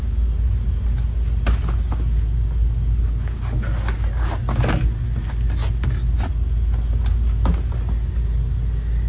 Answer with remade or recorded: recorded